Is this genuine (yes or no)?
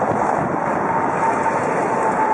yes